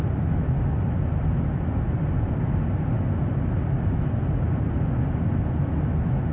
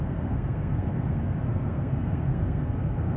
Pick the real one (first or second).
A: first